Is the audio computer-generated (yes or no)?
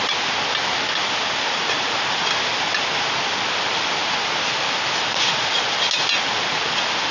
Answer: no